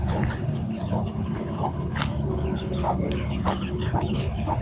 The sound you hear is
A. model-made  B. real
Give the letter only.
A